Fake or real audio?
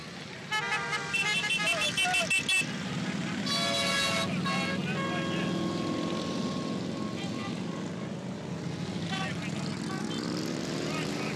real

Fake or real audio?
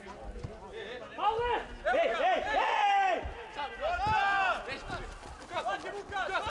real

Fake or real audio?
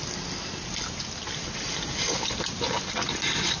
real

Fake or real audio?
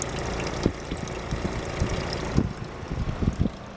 real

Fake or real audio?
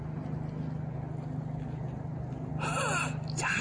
real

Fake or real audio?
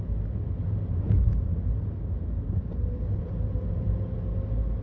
real